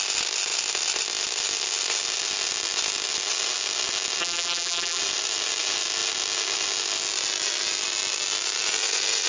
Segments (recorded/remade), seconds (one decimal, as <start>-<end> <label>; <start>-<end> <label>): 0.0-4.2 recorded; 4.2-5.0 remade; 5.0-9.3 recorded